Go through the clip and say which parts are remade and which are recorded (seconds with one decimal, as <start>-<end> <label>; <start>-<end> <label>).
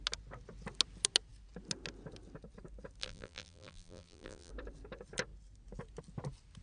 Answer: 0.0-3.0 recorded; 3.0-4.5 remade; 4.5-6.6 recorded